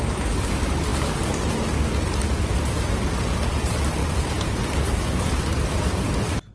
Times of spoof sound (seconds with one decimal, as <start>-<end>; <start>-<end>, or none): 4.0-5.3